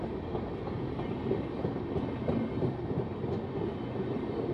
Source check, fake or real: fake